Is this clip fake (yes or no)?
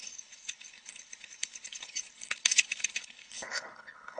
yes